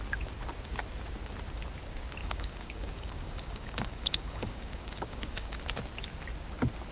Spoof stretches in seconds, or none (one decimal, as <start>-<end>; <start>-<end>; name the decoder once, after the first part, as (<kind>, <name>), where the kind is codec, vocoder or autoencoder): 2.2-5.6 (codec, DAC)